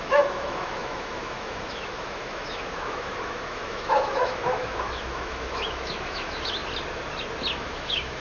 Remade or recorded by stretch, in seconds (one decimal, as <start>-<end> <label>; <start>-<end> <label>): 0.0-6.6 remade; 6.6-7.6 recorded; 7.6-8.2 remade